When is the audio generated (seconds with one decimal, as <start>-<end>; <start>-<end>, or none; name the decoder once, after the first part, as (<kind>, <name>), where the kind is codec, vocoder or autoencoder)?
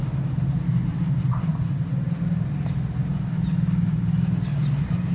0.9-2.5 (vocoder, BigVGAN v2); 3.0-5.1